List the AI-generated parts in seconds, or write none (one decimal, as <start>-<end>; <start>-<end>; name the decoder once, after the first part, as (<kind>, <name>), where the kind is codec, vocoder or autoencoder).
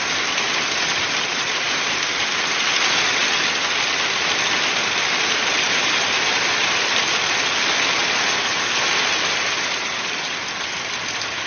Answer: 1.0-2.2 (vocoder, BigVGAN v2); 5.3-7.2